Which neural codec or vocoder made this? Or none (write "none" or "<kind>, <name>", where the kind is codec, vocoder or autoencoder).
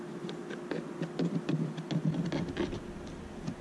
none